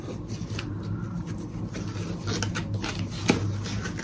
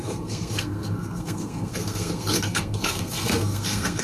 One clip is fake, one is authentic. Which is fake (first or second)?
second